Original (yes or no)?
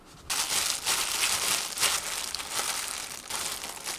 yes